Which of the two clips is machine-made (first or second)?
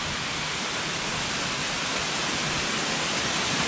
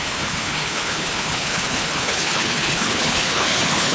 second